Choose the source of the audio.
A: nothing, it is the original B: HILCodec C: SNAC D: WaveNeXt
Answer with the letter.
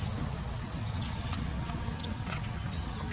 D